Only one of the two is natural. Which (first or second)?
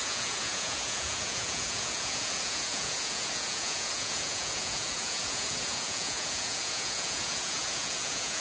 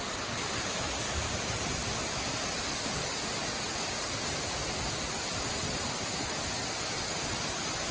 second